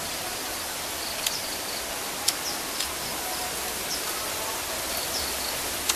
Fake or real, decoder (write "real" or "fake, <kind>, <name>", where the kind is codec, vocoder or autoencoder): real